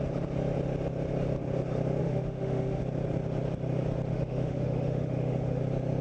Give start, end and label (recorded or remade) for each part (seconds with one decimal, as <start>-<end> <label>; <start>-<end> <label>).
0.0-2.0 recorded; 2.0-2.8 remade; 2.8-4.1 recorded; 4.1-5.6 remade; 5.6-6.0 recorded

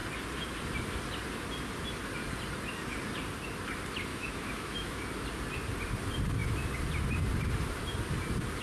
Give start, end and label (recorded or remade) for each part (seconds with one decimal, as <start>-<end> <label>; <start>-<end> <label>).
0.0-4.1 recorded; 4.1-5.0 remade; 5.0-8.6 recorded

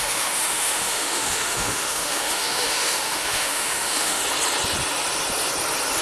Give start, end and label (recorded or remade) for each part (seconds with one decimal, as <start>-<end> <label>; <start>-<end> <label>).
0.0-4.2 remade; 4.2-6.0 recorded